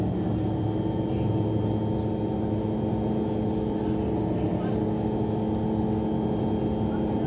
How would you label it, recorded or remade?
recorded